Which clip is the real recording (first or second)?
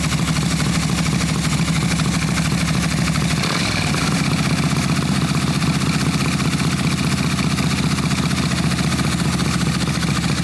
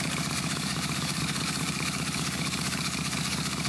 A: first